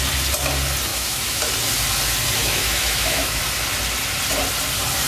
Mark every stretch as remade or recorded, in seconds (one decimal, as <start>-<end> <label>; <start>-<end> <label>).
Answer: 0.0-0.9 recorded; 0.9-1.4 remade; 1.4-2.4 recorded; 2.4-3.4 remade; 3.4-5.1 recorded